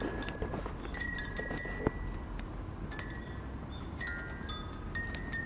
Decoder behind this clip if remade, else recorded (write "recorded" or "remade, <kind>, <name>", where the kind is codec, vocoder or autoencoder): recorded